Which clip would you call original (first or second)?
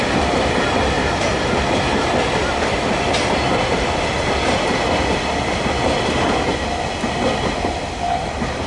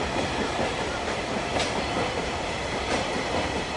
first